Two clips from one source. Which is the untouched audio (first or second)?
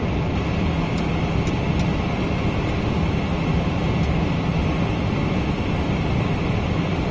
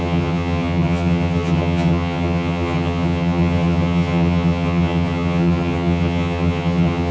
first